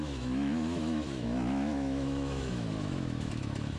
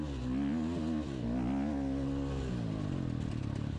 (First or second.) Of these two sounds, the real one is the second